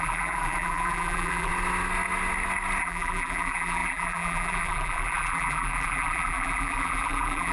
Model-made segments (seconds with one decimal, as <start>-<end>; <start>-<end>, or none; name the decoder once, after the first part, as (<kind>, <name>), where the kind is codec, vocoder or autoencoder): 0.0-1.5 (vocoder, BigVGAN v2); 2.8-7.5